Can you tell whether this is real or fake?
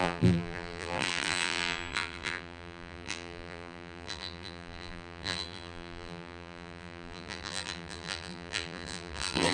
fake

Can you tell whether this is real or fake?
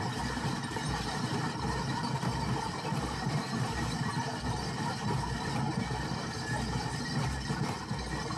fake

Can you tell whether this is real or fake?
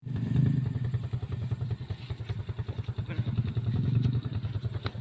real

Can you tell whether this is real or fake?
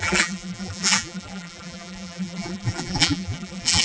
fake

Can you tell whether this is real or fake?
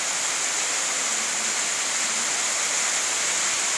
real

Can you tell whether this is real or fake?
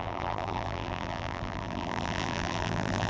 fake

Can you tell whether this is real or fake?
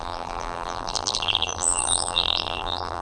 fake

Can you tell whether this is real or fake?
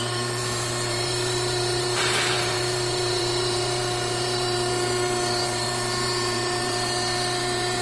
fake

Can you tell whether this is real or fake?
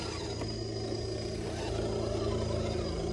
real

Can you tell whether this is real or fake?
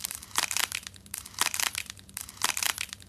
fake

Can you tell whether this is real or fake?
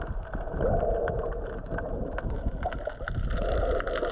real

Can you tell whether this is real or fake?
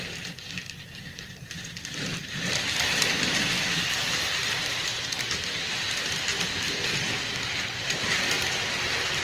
fake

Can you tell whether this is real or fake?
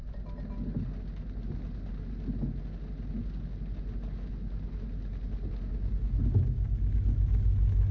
real